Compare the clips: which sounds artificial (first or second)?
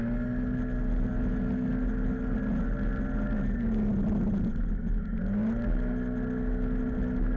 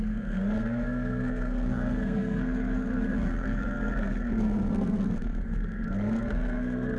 second